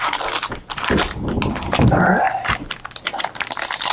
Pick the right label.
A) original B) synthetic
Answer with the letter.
A